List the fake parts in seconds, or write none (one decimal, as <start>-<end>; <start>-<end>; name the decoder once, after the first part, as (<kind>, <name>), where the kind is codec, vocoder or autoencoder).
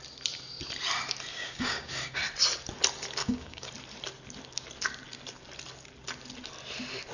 1.3-2.2 (codec, DAC); 3.2-3.7